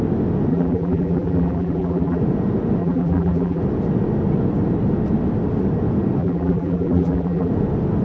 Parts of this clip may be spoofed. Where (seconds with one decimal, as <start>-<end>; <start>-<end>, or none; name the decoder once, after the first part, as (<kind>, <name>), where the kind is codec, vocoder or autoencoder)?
0.5-2.2 (vocoder, BigVGAN v2); 2.8-3.6; 6.2-7.5